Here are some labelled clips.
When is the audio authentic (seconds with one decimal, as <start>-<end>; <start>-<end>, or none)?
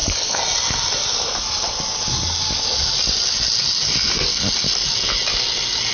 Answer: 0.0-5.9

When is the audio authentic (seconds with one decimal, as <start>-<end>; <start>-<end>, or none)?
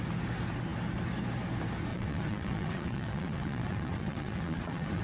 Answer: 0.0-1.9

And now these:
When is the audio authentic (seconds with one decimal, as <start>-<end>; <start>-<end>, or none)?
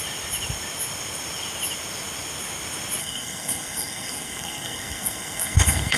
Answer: 0.0-3.0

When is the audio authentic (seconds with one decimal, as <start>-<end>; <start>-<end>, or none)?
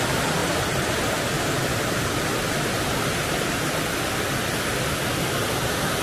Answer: 0.0-6.0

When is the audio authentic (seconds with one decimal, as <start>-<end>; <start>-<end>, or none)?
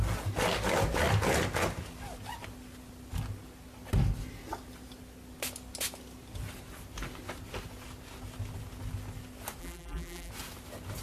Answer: 0.0-9.6; 10.3-11.0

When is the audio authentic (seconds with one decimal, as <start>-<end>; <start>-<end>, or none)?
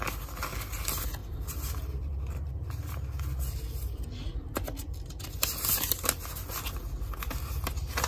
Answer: 0.0-1.2; 2.5-4.3; 5.1-8.1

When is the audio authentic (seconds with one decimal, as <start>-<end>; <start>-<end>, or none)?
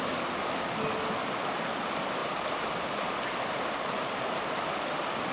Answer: 0.0-5.3